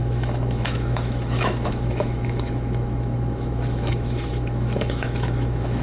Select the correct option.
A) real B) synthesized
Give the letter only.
B